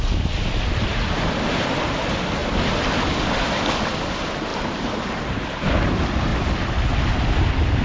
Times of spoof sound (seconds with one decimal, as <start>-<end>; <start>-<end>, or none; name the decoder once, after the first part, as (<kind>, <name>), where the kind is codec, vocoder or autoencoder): 4.5-5.8 (vocoder, BigVGAN v2)